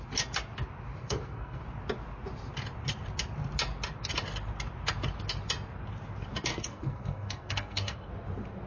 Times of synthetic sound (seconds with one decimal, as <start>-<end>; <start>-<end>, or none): 1.0-1.6; 6.5-8.1